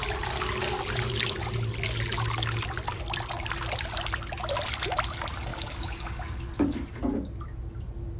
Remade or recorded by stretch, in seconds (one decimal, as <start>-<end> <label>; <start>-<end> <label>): 0.0-5.5 recorded; 5.5-7.0 remade; 7.0-8.2 recorded